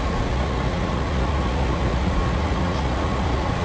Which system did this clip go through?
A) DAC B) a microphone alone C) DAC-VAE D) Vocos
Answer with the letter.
D